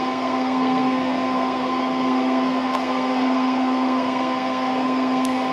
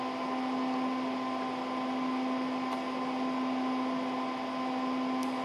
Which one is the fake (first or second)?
first